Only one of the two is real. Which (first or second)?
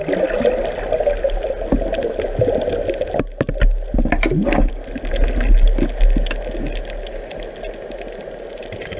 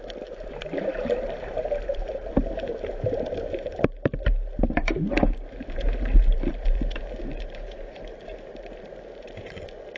first